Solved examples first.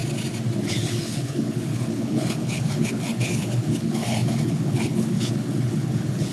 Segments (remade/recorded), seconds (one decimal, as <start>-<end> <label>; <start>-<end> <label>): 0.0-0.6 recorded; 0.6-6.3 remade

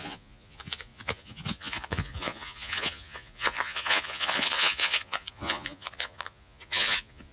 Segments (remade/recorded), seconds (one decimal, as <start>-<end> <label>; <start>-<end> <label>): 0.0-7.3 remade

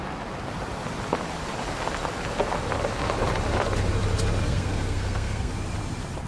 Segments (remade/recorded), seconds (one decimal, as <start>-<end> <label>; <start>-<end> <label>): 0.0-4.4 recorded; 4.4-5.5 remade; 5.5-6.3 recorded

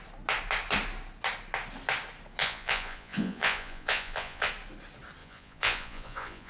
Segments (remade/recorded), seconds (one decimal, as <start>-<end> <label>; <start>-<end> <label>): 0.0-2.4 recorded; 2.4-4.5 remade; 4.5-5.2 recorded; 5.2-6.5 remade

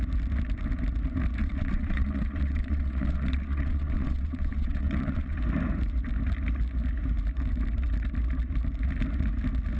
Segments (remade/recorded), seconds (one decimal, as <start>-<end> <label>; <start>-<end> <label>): 0.0-1.4 recorded; 1.4-5.4 remade; 5.4-9.8 recorded